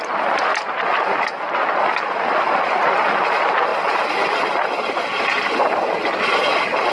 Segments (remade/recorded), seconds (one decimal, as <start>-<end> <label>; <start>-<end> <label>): 0.0-6.9 recorded